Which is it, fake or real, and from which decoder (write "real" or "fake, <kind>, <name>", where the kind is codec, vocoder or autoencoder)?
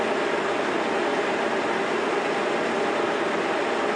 real